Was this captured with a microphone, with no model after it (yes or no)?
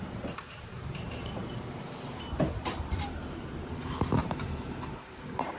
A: no